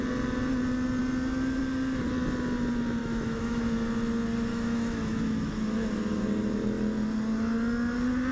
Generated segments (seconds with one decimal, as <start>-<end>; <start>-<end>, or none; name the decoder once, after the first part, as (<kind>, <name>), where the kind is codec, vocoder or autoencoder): 3.0-3.6 (autoencoder, DAC-VAE); 4.5-5.9